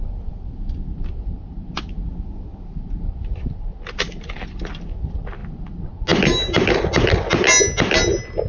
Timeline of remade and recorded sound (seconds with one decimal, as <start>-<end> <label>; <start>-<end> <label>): 0.0-8.5 recorded